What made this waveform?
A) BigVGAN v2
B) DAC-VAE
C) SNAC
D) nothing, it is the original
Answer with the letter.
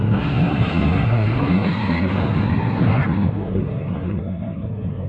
C